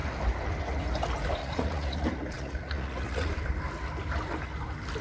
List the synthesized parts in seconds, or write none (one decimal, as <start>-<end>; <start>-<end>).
1.4-3.3

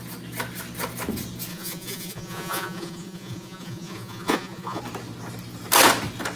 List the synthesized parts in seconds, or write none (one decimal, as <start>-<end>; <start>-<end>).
1.5-4.8

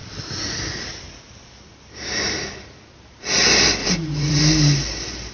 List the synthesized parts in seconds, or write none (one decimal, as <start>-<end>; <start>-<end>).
3.8-4.4

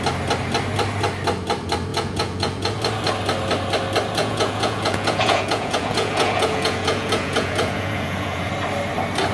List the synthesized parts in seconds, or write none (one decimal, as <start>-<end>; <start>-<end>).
1.9-2.8; 4.2-8.5